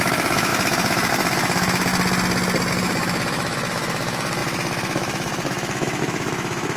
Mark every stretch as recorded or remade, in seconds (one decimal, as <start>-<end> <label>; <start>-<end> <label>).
0.0-1.9 remade; 1.9-2.7 recorded; 2.7-6.8 remade